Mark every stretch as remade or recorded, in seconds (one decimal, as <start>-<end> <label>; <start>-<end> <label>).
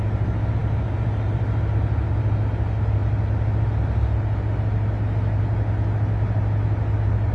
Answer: 0.0-7.3 recorded